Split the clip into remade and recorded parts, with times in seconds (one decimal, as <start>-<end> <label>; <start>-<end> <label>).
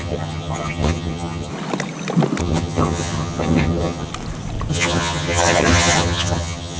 0.0-1.5 remade; 1.5-2.4 recorded; 2.4-4.1 remade; 4.1-4.7 recorded; 4.7-6.8 remade